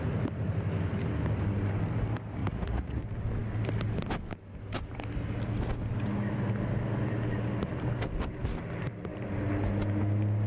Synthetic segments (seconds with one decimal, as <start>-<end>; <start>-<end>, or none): 2.4-3.0